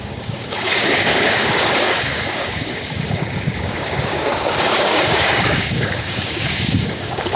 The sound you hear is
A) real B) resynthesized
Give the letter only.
B